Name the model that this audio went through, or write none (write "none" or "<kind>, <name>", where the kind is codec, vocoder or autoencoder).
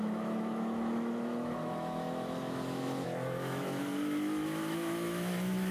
autoencoder, DAC-VAE